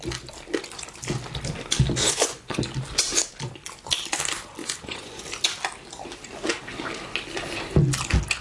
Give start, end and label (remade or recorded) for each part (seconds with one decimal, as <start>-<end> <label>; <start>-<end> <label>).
0.0-2.0 recorded; 2.0-2.6 remade; 2.6-4.6 recorded; 4.6-5.2 remade; 5.2-8.4 recorded